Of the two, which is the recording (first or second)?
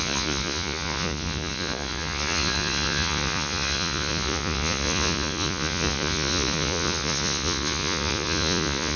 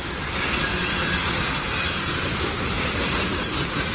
second